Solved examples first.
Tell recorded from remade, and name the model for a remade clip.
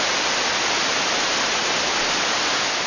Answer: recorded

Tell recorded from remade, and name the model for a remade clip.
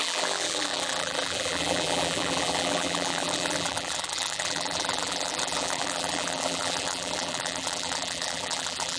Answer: remade, vocoder, BigVGAN v2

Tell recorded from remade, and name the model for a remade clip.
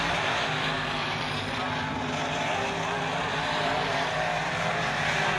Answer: recorded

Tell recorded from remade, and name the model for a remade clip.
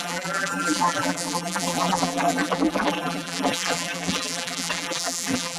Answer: remade, vocoder, BigVGAN v2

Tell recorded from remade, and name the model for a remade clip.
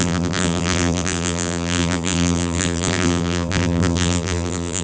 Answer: remade, vocoder, BigVGAN v2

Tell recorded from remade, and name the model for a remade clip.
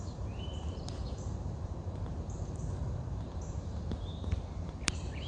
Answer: remade, vocoder, BigVGAN v2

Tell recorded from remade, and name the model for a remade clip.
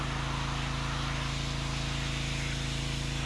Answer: recorded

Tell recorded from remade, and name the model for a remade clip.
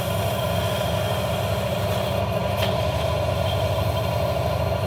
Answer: recorded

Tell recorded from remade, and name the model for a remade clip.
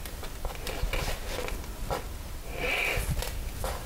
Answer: recorded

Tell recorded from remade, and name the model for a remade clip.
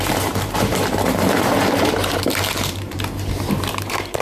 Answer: remade, vocoder, BigVGAN v2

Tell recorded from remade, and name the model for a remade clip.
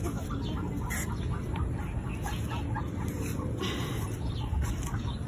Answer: recorded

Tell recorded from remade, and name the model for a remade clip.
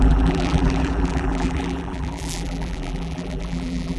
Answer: remade, vocoder, BigVGAN v2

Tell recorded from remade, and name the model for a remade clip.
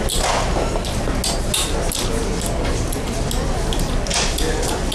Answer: recorded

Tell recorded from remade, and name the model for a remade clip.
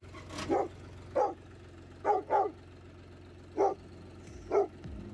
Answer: recorded